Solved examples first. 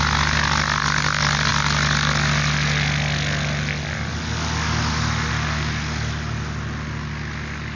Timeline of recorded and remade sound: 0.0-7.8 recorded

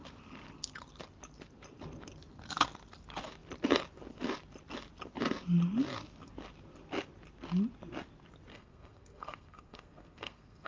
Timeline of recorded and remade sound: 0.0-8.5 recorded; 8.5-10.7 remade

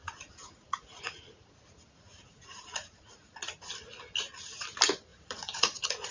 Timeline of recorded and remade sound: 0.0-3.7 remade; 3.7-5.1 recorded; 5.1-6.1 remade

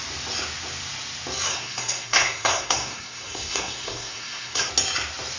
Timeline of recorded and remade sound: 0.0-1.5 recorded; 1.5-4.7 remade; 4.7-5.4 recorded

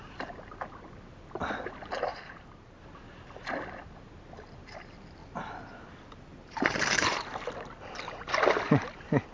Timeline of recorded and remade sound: 0.0-2.1 recorded; 2.1-2.8 remade; 2.8-5.2 recorded; 5.2-7.5 remade; 7.5-9.3 recorded

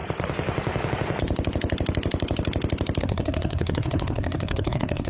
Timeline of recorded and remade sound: 0.0-3.0 recorded; 3.0-5.1 remade